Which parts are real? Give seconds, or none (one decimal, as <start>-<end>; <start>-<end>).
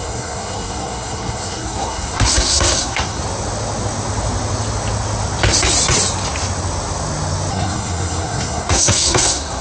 3.2-7.5